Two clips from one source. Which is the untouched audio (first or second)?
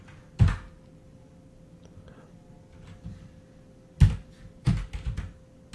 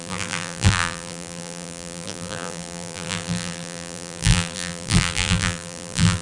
first